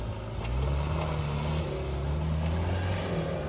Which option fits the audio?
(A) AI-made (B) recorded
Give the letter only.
B